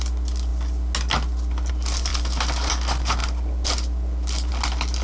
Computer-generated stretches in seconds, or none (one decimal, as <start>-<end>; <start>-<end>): none